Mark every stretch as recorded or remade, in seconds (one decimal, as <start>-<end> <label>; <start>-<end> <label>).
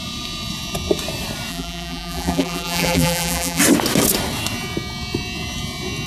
0.0-1.5 recorded; 1.5-3.6 remade; 3.6-6.1 recorded